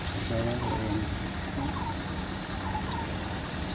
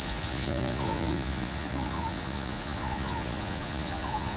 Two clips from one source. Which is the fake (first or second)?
second